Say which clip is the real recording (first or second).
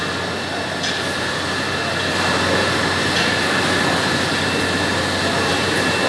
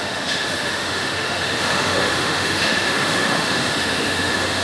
first